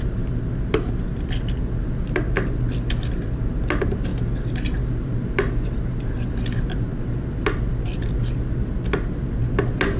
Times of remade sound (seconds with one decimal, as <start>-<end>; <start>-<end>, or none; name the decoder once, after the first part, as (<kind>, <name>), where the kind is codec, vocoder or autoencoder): none